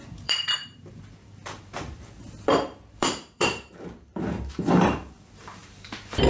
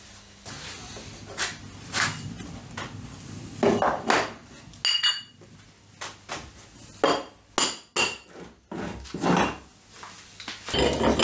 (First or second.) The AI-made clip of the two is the first